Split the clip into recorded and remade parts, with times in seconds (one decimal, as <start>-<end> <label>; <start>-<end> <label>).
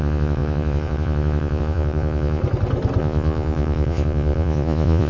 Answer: 0.0-2.4 remade; 2.4-3.0 recorded; 3.0-5.1 remade